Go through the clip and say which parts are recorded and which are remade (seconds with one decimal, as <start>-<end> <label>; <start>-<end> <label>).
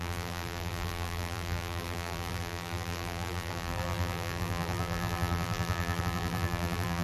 0.0-7.0 remade